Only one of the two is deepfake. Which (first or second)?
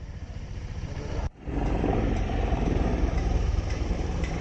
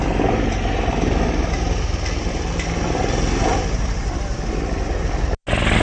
first